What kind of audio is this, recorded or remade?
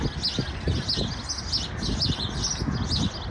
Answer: recorded